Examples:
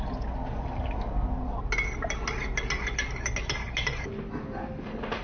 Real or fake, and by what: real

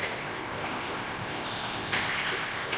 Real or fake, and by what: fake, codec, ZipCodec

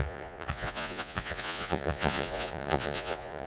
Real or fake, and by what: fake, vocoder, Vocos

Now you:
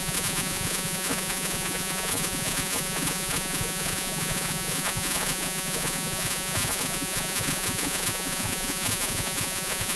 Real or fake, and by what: fake, vocoder, Vocos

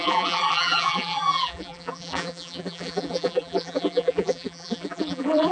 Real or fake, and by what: fake, vocoder, BigVGAN v2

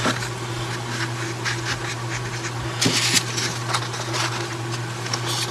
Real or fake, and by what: real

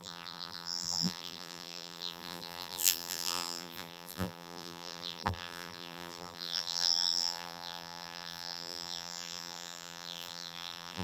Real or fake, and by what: fake, vocoder, BigVGAN v2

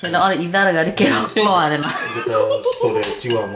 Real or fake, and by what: real